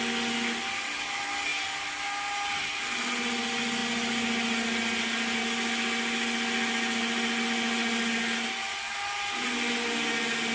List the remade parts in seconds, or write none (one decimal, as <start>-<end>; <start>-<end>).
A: none